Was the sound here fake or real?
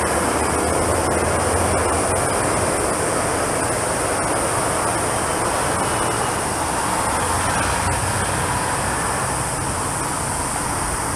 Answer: real